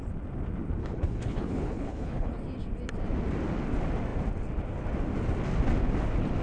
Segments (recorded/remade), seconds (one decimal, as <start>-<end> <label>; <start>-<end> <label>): 0.0-0.8 recorded; 0.8-2.3 remade; 2.3-6.4 recorded